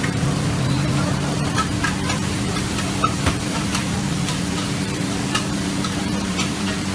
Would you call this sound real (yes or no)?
no